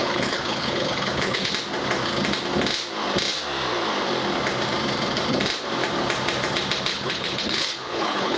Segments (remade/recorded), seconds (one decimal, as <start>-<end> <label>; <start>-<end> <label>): 0.0-1.5 remade; 1.5-6.9 recorded; 6.9-8.4 remade